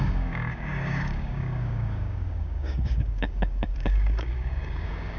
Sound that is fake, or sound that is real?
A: fake